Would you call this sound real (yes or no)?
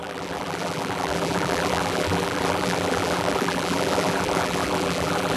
no